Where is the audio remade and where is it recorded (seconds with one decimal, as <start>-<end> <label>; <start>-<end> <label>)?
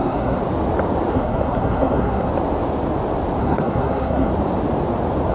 0.0-0.4 remade; 0.4-1.1 recorded; 1.1-2.3 remade; 2.3-3.4 recorded; 3.4-4.3 remade; 4.3-5.3 recorded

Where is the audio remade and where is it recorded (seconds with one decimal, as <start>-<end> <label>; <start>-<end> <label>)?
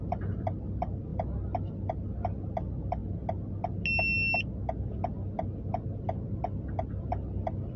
0.0-7.8 recorded